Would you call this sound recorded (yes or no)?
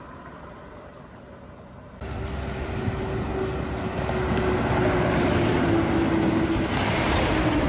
yes